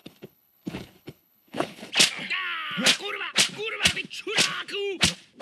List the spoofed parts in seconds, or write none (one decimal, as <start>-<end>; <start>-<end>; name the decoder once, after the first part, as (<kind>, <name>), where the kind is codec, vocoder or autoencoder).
0.0-1.9 (codec, HILCodec)